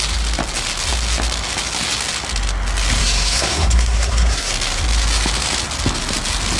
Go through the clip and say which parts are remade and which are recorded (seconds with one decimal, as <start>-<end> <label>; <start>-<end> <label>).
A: 0.0-3.0 recorded; 3.0-4.5 remade; 4.5-6.6 recorded